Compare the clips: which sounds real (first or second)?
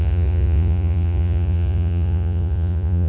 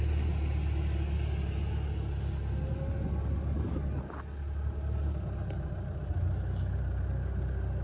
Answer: second